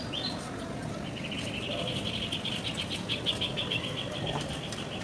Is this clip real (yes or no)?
yes